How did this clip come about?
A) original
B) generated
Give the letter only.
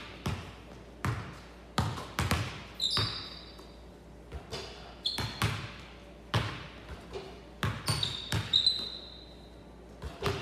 A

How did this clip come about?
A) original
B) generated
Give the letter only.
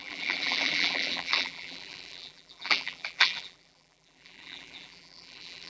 B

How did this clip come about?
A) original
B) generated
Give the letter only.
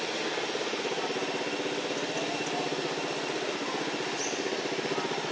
A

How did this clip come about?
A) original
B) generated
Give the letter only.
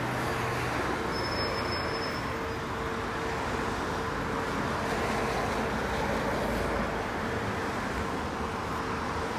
A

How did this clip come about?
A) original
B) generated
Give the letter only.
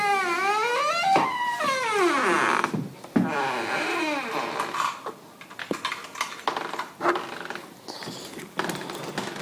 A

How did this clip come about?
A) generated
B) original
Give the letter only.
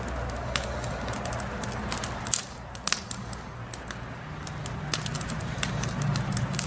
B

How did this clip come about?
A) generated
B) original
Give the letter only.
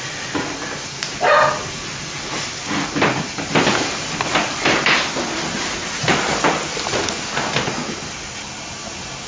B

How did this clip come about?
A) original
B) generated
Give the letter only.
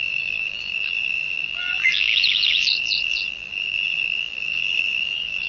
B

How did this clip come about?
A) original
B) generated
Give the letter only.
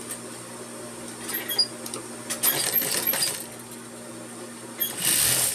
A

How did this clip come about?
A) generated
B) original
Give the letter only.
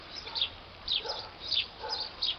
A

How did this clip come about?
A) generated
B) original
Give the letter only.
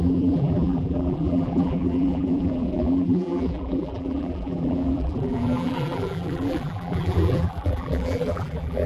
A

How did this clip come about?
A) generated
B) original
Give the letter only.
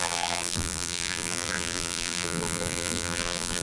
A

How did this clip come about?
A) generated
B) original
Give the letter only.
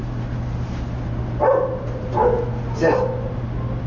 B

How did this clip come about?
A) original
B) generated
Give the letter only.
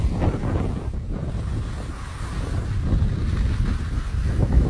A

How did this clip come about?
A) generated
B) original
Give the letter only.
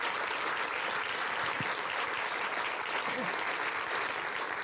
B